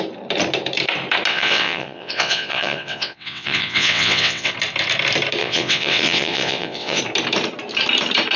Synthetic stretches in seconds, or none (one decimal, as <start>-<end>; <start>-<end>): 1.3-4.5; 5.4-7.0